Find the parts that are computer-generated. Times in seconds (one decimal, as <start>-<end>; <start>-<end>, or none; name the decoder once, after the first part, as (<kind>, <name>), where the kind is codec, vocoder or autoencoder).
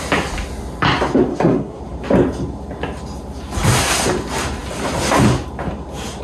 1.3-1.8 (codec, SNAC)